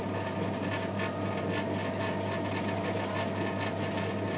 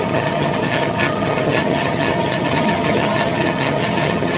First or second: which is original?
first